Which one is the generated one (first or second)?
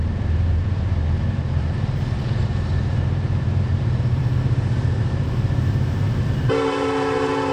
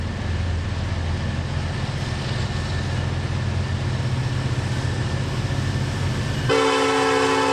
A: first